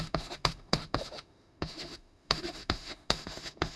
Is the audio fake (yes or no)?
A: yes